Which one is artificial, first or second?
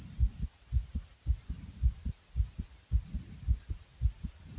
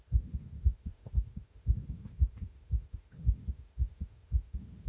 second